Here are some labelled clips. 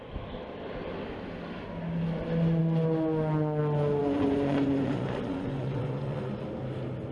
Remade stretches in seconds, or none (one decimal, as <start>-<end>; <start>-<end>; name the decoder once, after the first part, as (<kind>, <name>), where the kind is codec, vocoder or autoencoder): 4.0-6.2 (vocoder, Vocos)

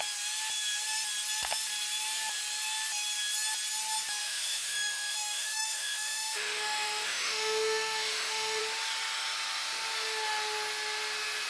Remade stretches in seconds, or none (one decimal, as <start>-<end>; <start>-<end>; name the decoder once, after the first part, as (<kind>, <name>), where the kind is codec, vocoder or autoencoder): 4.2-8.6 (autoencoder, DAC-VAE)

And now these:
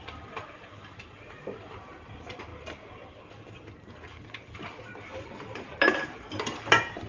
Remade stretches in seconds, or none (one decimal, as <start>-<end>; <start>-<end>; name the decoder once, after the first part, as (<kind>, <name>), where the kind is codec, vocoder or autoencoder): 5.1-6.2 (vocoder, BigVGAN v2)

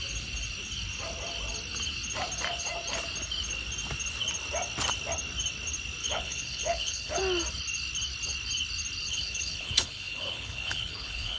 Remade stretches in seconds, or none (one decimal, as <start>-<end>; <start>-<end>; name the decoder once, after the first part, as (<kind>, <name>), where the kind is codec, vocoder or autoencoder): 6.0-7.2 (codec, HILCodec); 9.0-11.4

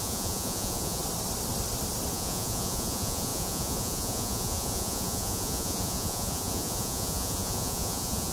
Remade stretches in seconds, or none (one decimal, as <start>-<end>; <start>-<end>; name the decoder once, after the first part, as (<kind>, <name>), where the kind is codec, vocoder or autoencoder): 0.0-1.0 (vocoder, Vocos); 2.1-8.3